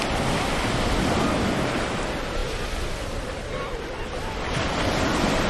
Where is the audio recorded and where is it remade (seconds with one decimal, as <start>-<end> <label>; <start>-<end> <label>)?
0.0-5.5 recorded